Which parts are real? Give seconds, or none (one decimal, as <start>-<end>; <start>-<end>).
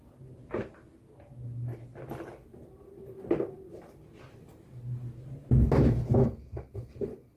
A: 0.0-6.2